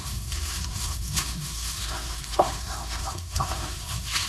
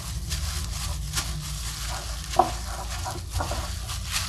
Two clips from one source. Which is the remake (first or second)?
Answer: first